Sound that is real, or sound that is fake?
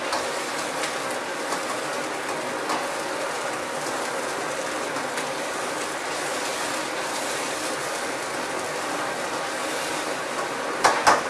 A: real